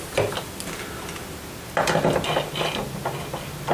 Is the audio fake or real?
real